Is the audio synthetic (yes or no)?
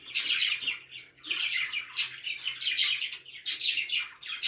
yes